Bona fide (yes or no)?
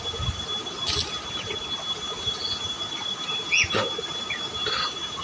yes